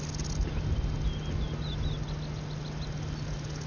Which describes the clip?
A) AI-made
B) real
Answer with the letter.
B